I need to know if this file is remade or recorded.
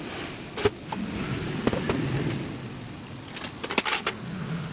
recorded